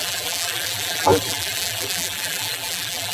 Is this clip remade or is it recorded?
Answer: remade